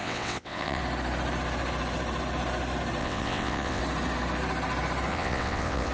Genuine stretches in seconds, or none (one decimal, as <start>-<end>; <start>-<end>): 0.8-3.0; 3.8-5.1